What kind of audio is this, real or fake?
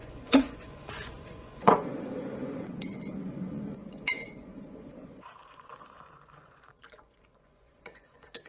fake